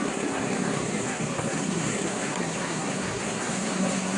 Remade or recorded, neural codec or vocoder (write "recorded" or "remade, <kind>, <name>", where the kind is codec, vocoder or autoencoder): remade, codec, SNAC